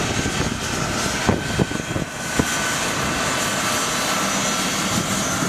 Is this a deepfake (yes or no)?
no